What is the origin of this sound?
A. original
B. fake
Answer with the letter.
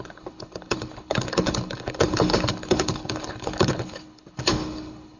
B